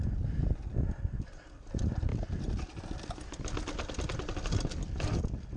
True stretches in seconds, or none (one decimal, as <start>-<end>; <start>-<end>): 0.0-5.6